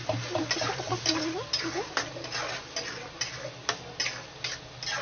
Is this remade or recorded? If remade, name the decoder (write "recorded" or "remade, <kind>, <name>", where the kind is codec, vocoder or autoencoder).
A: recorded